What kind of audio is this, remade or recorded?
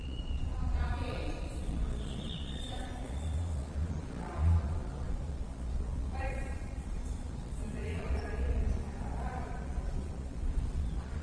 remade